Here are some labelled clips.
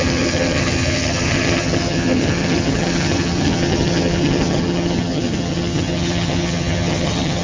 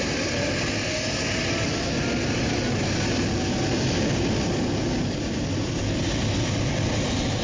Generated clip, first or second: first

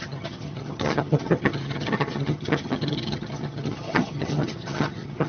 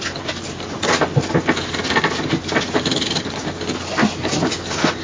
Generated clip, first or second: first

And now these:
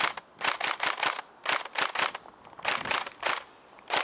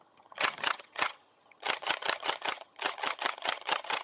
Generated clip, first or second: second